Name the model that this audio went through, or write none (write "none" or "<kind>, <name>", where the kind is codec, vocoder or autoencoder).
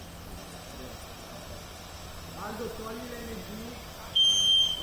none